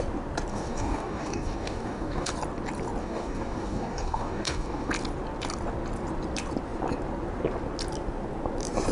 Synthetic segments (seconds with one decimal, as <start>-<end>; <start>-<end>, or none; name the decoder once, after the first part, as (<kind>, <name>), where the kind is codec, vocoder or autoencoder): 0.5-2.3 (codec, DAC); 3.0-4.9